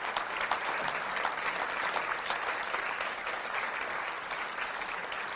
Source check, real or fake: real